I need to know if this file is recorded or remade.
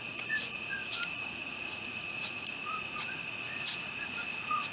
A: remade